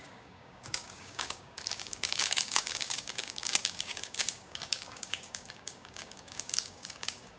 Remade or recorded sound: remade